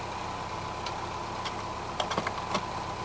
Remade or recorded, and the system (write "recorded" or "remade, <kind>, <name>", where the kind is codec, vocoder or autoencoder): recorded